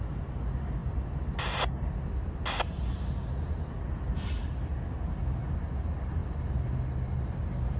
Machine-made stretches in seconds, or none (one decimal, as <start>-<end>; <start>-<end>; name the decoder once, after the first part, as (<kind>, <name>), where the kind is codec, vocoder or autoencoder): none